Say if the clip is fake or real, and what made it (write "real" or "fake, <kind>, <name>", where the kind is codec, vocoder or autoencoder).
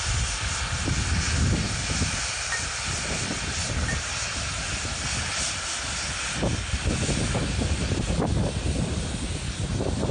real